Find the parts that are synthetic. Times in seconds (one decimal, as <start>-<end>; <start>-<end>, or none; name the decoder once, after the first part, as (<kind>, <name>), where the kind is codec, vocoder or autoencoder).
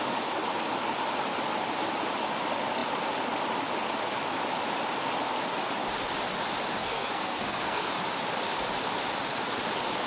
6.8-7.9 (codec, SNAC)